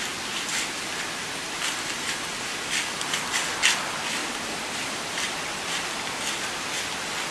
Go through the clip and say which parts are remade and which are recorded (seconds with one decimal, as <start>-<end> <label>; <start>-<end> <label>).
0.0-4.2 recorded; 4.2-4.8 remade; 4.8-7.3 recorded